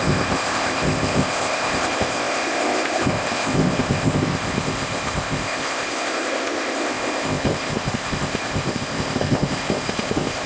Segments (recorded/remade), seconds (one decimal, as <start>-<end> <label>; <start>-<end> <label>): 0.0-10.5 remade